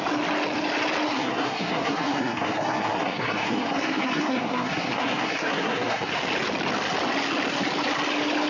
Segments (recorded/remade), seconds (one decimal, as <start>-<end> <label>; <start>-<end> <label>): 0.0-1.1 recorded; 1.1-6.1 remade; 6.1-8.5 recorded